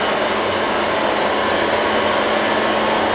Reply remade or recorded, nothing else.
recorded